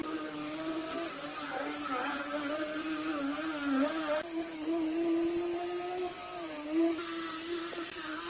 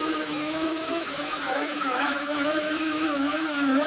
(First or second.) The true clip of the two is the first